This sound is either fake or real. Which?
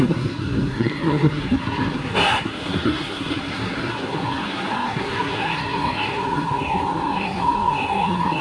fake